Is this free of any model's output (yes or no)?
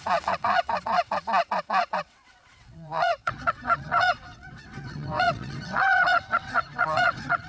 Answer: no